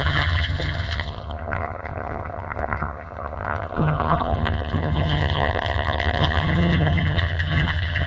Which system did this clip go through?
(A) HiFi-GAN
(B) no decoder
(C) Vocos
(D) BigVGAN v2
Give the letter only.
A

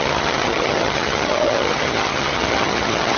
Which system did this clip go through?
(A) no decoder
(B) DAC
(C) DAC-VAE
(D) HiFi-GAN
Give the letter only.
D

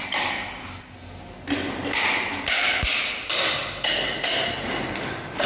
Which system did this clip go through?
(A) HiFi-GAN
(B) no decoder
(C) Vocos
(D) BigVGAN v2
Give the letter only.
B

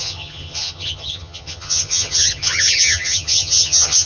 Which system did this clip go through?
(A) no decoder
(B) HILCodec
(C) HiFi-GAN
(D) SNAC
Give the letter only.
C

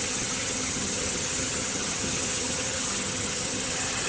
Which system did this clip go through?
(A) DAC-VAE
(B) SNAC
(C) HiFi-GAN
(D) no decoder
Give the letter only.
C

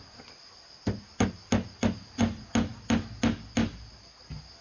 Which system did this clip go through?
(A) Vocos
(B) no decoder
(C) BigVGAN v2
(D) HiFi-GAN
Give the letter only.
B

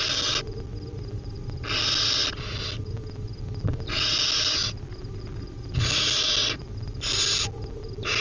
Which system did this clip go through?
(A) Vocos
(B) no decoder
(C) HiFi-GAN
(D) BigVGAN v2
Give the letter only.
B